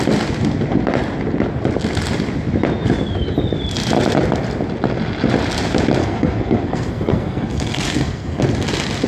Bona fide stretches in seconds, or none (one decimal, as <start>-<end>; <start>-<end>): 0.0-6.0; 8.4-9.1